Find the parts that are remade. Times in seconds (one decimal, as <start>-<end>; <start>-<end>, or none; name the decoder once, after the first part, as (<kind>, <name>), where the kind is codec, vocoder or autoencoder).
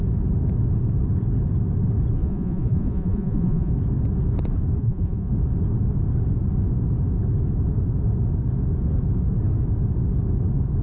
2.2-3.7 (vocoder, Vocos); 4.8-5.3